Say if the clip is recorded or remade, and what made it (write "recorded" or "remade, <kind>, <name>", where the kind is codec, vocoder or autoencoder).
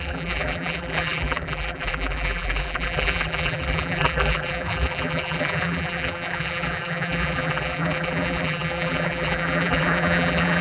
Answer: remade, vocoder, BigVGAN v2